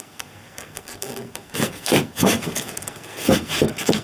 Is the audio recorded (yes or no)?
no